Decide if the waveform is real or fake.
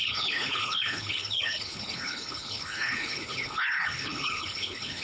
fake